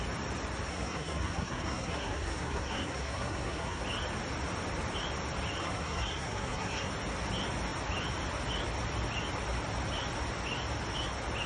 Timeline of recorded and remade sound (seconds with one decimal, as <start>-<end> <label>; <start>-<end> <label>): 0.0-0.7 recorded; 0.7-3.8 remade; 3.8-5.6 recorded; 5.6-6.9 remade; 6.9-11.5 recorded

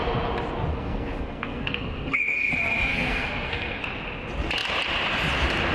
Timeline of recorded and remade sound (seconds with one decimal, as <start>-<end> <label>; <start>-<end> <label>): 0.0-0.7 recorded; 0.7-2.5 remade; 2.5-2.9 recorded; 2.9-3.8 remade; 3.8-5.7 recorded

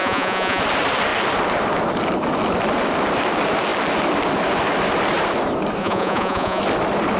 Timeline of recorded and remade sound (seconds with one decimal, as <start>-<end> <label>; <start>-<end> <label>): 0.0-0.6 remade; 0.6-5.8 recorded; 5.8-6.6 remade; 6.6-7.2 recorded

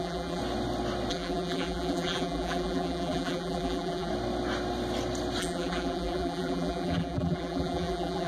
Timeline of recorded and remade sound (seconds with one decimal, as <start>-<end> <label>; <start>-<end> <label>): 0.0-0.4 remade; 0.4-1.1 recorded; 1.1-4.1 remade; 4.1-5.4 recorded; 5.4-8.3 remade